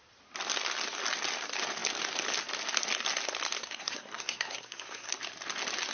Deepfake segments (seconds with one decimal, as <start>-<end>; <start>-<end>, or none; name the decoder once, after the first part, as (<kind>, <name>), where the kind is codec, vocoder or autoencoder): 3.6-5.1 (codec, SNAC)